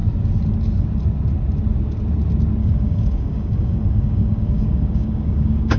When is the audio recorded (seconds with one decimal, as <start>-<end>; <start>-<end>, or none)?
0.0-2.6